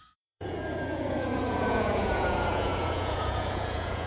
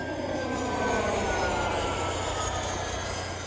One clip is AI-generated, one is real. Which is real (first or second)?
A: second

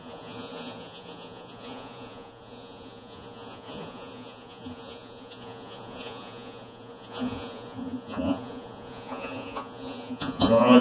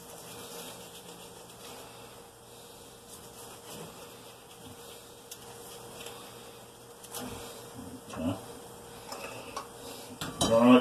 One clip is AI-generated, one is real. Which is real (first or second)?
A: second